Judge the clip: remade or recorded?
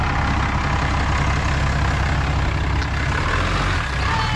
recorded